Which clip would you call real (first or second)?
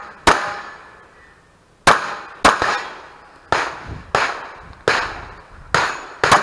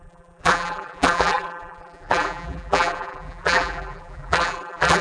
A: first